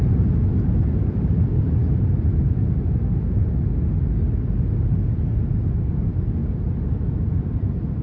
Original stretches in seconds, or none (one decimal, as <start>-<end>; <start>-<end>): 0.0-8.0

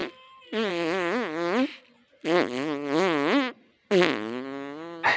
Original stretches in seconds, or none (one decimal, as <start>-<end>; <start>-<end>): 0.0-5.2